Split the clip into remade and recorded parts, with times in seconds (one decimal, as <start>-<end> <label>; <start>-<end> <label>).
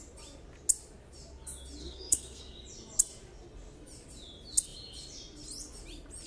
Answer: 0.0-1.8 recorded; 1.8-2.4 remade; 2.4-6.3 recorded